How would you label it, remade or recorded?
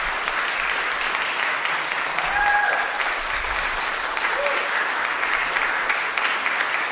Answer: recorded